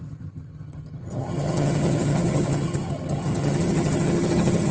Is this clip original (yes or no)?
no